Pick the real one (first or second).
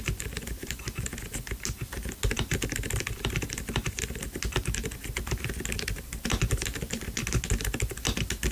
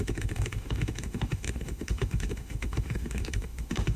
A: first